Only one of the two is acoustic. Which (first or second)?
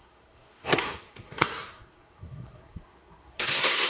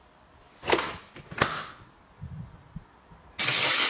second